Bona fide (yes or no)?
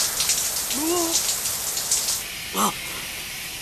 yes